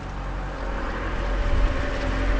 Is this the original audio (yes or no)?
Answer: yes